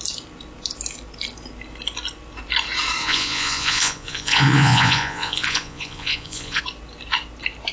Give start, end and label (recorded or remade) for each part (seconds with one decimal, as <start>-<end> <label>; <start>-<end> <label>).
0.0-3.0 recorded; 3.0-6.6 remade; 6.6-7.7 recorded